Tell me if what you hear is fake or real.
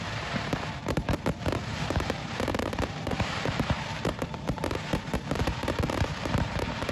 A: fake